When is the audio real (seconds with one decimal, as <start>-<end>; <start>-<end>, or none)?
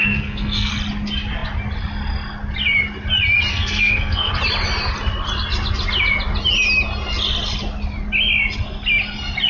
0.7-3.5; 4.3-9.5